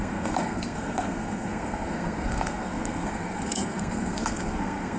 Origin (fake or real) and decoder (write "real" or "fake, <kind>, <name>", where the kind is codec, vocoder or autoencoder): fake, codec, SNAC